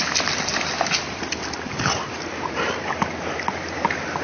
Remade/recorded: recorded